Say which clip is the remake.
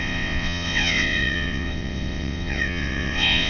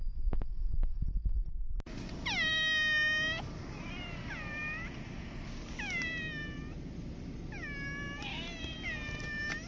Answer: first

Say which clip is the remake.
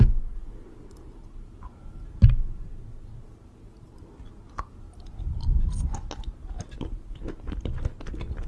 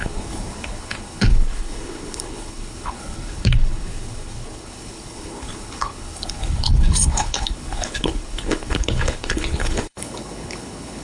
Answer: second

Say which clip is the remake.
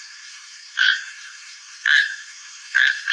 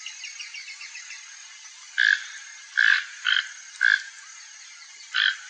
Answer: first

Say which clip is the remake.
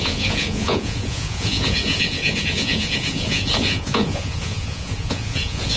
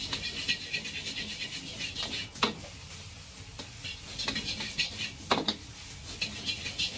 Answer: first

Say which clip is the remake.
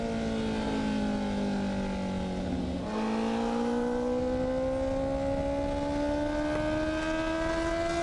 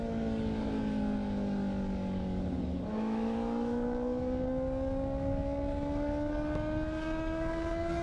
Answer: second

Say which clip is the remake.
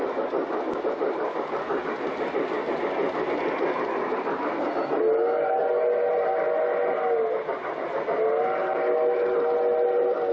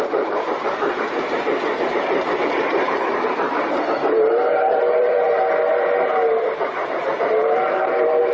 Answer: second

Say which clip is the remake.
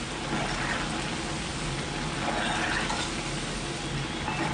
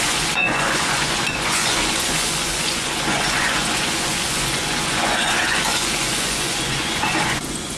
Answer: second